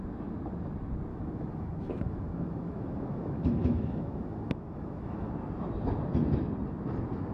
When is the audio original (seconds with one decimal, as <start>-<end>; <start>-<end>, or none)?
0.0-1.1; 5.3-7.3